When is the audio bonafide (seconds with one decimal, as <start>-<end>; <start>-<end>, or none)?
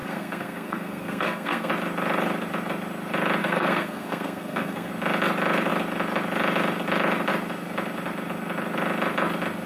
1.7-3.4; 4.9-9.7